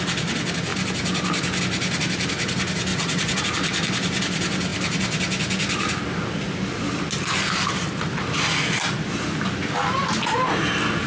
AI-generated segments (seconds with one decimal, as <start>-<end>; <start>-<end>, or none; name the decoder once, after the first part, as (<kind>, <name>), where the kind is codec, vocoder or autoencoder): 2.9-3.4 (vocoder, WaveNeXt)